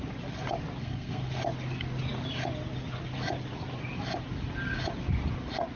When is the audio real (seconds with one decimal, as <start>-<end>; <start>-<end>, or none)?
0.0-0.8; 1.4-5.8